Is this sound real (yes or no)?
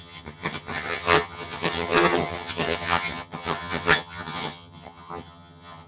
no